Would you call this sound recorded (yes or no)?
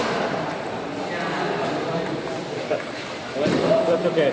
yes